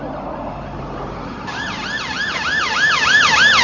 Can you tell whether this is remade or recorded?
recorded